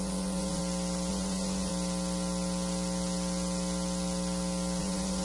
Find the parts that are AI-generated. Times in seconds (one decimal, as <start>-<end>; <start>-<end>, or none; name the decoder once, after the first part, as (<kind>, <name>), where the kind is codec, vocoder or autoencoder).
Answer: 0.0-0.6 (vocoder, Vocos); 1.1-1.7; 4.8-5.2

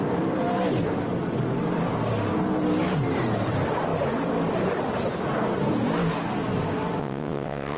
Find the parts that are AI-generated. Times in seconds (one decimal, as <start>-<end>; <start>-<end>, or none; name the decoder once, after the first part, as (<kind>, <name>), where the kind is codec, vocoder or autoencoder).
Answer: 7.0-7.8 (vocoder, WaveNeXt)

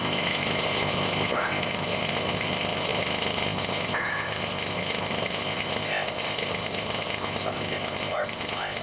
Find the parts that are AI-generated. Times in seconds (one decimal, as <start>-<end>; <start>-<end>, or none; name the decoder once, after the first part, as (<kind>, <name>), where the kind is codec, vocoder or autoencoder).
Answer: 0.0-8.8 (codec, ZipCodec)

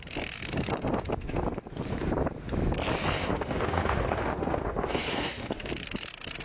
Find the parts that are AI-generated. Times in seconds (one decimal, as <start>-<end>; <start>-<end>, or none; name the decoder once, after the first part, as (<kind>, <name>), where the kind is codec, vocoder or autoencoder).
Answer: 3.2-5.7 (autoencoder, DAC-VAE)

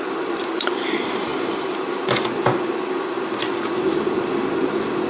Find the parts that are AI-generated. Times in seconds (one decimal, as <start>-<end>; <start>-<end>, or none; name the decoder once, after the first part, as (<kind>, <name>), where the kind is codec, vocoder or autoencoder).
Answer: none

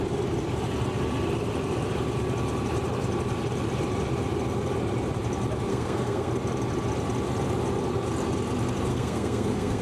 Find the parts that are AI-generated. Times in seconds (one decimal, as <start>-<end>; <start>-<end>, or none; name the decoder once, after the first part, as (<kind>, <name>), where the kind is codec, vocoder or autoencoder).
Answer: 5.7-6.3 (codec, SNAC); 8.9-9.8